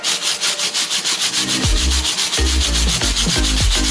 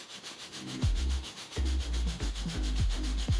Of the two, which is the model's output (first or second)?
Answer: second